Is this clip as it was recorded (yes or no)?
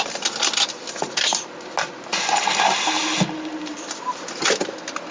yes